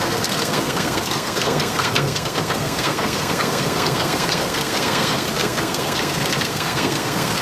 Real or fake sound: fake